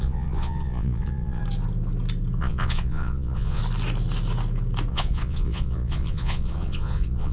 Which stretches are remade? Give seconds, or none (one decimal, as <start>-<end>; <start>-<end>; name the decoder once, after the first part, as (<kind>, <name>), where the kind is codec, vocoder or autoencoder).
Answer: 0.0-1.4 (vocoder, Vocos); 2.4-3.6; 4.9-7.3